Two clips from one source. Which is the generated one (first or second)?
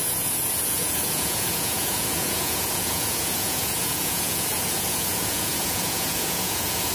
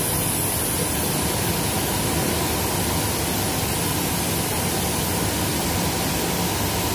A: first